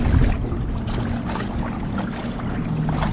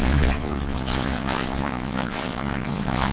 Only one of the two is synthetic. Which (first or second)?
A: second